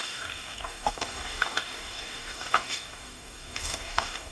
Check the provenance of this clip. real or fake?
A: fake